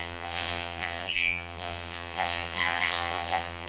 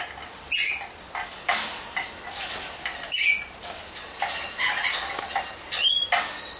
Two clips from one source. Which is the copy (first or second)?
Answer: first